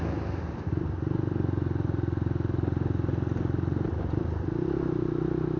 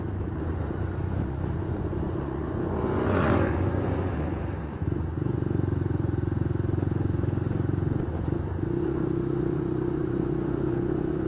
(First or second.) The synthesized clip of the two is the second